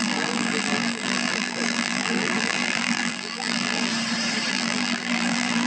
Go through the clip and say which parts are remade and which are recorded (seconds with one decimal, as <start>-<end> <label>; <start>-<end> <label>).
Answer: 0.0-3.9 remade; 3.9-4.5 recorded; 4.5-5.7 remade

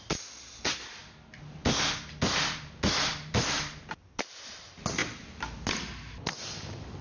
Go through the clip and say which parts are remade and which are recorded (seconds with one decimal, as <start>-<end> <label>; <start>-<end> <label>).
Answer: 0.0-1.0 remade; 1.0-3.3 recorded; 3.3-5.0 remade; 5.0-7.0 recorded